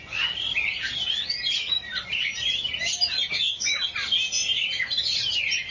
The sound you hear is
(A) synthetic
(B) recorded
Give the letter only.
B